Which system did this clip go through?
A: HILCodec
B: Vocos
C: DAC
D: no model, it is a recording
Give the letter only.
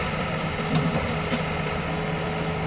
D